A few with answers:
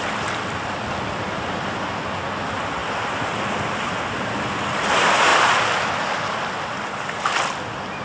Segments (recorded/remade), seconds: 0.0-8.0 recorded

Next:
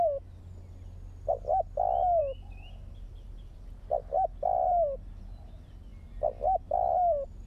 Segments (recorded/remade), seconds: 0.0-7.5 recorded

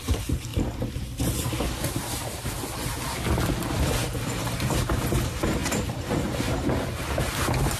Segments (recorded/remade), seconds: 0.0-0.5 remade; 0.5-4.4 recorded; 4.4-5.6 remade; 5.6-7.8 recorded

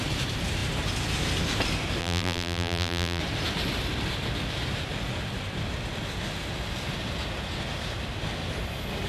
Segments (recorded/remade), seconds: 0.0-2.0 recorded; 2.0-3.2 remade; 3.2-9.1 recorded

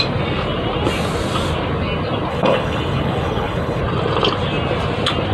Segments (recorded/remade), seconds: 0.0-2.3 recorded; 2.3-3.8 remade; 3.8-5.3 recorded